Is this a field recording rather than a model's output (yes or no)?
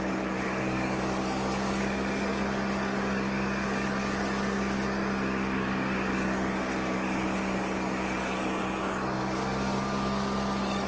no